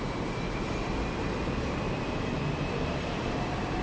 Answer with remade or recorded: remade